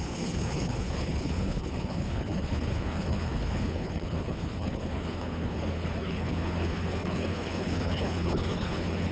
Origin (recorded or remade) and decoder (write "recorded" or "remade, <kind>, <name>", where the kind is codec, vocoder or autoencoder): remade, codec, HILCodec